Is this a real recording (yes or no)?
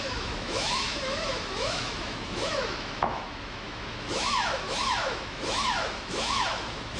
no